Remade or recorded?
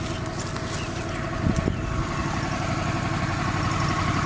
recorded